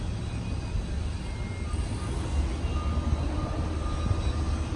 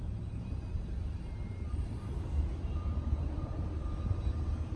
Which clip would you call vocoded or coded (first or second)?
second